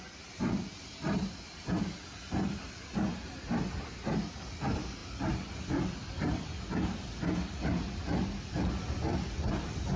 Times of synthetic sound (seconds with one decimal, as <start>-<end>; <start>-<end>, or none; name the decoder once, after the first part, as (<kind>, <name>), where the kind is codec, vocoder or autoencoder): none